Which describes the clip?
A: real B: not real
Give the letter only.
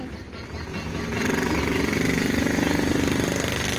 A